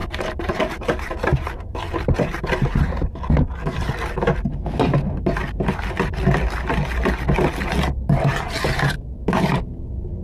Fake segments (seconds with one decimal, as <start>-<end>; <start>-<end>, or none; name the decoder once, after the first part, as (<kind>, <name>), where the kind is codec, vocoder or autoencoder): 0.0-3.2 (vocoder, BigVGAN v2)